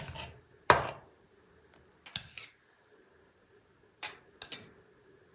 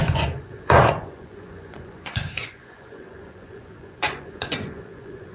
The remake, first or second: second